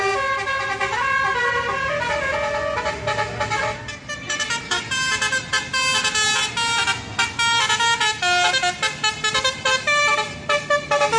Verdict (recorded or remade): recorded